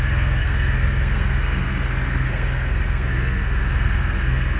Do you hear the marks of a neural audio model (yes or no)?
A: yes